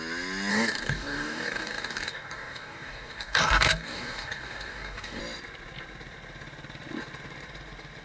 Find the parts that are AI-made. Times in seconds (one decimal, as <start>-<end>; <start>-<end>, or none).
0.5-5.2